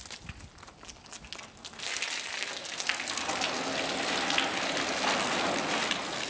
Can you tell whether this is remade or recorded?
recorded